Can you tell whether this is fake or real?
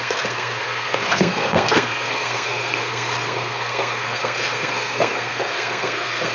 fake